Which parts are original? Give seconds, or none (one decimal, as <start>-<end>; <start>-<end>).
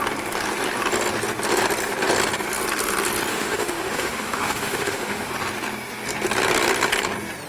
0.0-3.3; 5.3-7.5